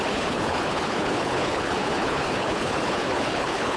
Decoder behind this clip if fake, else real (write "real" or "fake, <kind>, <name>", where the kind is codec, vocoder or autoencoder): fake, codec, HILCodec